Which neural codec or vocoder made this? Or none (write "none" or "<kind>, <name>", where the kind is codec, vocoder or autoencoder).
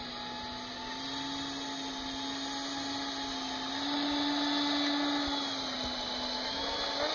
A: none